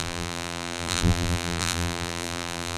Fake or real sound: fake